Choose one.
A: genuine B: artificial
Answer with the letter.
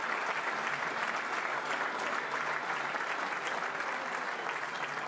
A